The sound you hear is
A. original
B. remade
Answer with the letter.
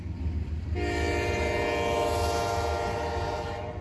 A